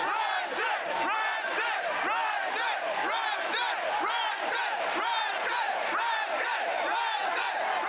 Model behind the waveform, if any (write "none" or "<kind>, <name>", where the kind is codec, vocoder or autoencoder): none